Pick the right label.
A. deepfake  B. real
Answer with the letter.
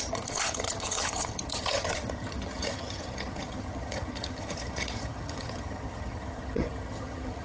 A